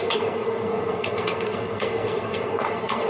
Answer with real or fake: fake